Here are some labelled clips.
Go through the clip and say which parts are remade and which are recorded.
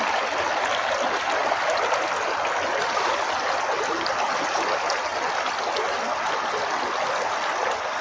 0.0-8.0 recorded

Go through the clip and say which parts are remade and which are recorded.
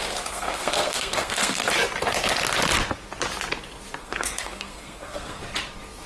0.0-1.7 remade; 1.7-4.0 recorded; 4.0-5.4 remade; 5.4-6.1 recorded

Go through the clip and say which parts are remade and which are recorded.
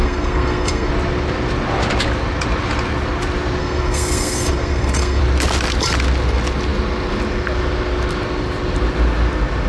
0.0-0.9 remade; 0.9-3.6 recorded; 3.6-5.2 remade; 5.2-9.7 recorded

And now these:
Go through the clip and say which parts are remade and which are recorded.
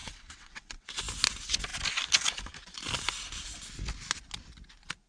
0.0-0.9 remade; 0.9-5.1 recorded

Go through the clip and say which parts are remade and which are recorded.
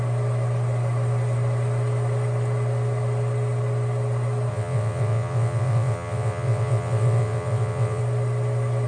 0.0-4.5 recorded; 4.5-8.0 remade; 8.0-8.9 recorded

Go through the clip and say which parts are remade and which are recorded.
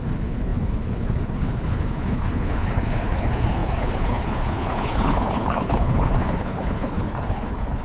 0.0-7.8 remade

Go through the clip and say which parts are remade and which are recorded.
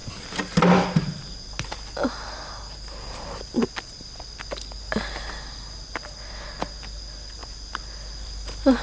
0.0-8.8 recorded